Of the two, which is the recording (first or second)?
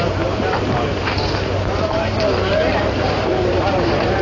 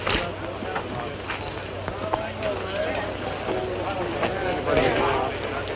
second